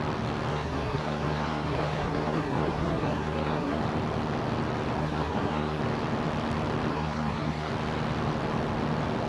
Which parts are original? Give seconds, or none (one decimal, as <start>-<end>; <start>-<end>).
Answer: 0.0-0.5; 3.8-5.0; 5.8-6.9; 7.7-9.3